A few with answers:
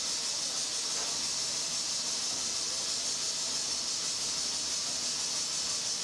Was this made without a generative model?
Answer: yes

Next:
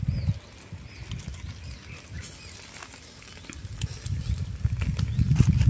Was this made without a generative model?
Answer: yes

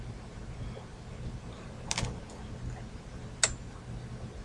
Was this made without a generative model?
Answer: yes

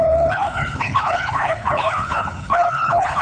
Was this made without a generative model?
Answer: no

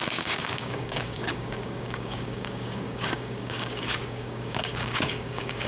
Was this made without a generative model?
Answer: no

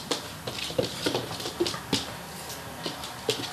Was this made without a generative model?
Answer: yes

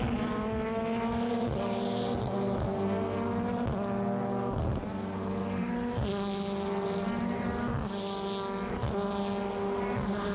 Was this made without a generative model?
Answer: yes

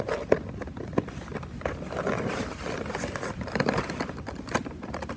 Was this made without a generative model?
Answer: no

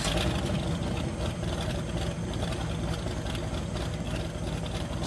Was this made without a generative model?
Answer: yes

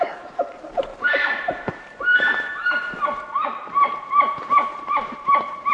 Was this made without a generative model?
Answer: no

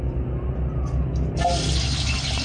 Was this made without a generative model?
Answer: yes